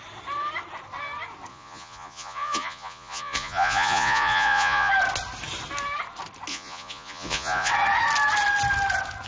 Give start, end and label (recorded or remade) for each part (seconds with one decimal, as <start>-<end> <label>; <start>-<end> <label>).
0.0-1.5 recorded; 1.5-4.9 remade; 4.9-6.5 recorded; 6.5-7.7 remade; 7.7-9.3 recorded